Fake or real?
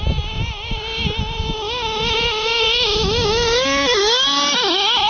real